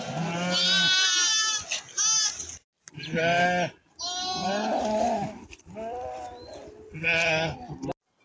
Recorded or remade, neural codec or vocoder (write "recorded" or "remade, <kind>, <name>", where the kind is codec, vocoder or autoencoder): recorded